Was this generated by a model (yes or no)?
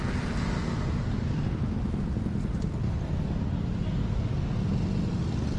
no